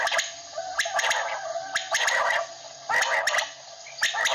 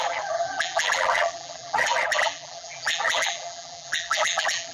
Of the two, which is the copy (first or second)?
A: second